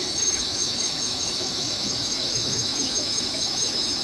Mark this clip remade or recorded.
remade